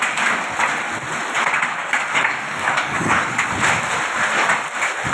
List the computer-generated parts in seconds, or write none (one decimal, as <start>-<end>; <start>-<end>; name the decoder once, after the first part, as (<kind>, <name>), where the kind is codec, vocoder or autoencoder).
1.8-3.4 (codec, DAC)